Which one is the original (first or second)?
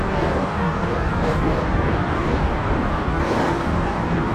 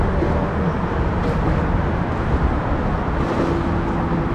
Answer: second